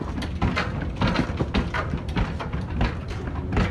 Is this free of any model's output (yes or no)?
yes